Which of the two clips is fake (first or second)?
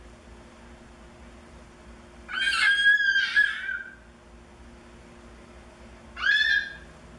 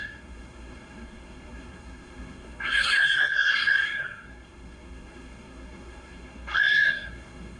second